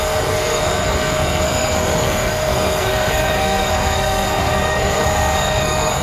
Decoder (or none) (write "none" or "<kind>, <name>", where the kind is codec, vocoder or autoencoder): codec, SNAC